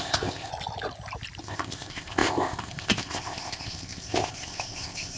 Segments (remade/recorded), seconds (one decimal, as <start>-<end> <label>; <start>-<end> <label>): 0.0-0.5 remade; 0.5-1.4 recorded; 1.4-5.2 remade